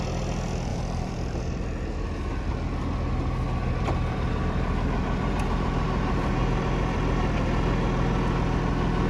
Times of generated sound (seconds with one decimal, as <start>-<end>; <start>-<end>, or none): 0.7-1.6; 3.6-7.4